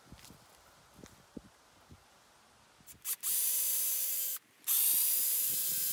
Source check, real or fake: real